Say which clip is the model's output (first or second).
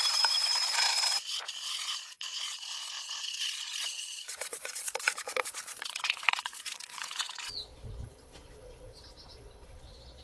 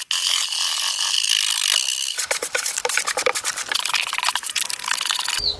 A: first